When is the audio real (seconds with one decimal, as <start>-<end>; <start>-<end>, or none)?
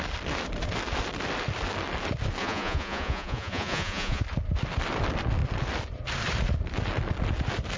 0.0-2.4; 4.2-7.8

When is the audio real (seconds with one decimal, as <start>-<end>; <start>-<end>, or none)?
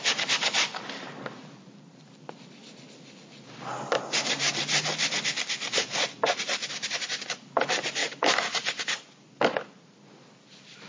0.0-10.9